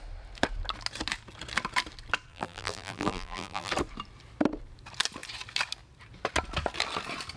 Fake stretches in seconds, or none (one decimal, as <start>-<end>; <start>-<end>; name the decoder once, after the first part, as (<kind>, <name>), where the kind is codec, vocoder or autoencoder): 2.3-3.7 (vocoder, BigVGAN v2)